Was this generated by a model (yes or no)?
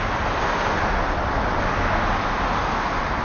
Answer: no